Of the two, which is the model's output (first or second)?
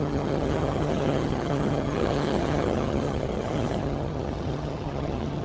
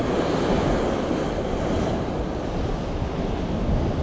first